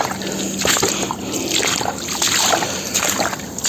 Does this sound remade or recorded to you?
remade